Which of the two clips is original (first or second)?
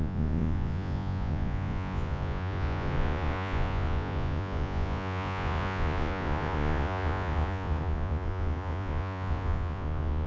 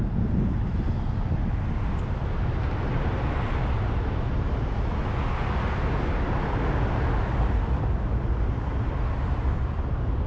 second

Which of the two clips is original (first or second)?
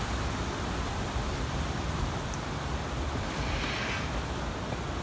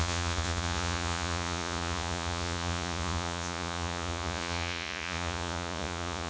first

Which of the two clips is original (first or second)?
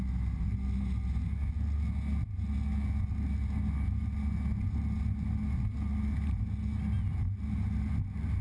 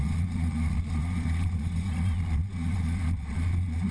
first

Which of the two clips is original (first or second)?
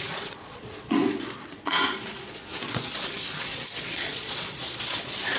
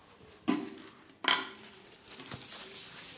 second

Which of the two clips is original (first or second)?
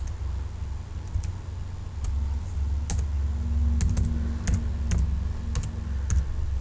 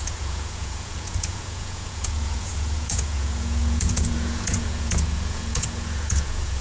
first